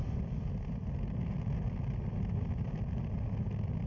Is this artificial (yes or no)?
no